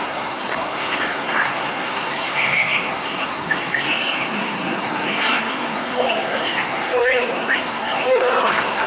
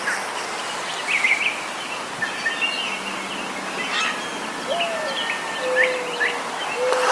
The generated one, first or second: first